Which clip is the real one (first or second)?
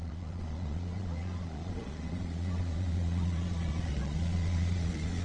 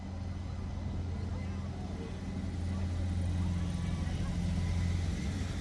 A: second